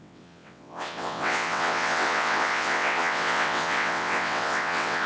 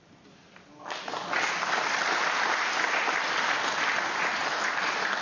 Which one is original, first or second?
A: second